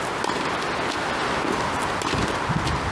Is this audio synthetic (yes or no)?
no